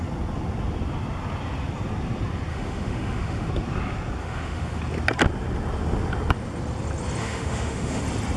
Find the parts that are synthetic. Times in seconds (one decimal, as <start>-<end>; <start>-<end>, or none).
2.5-3.5; 4.2-4.8; 7.2-8.0